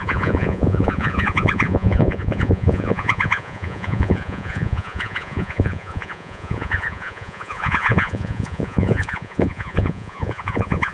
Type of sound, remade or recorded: remade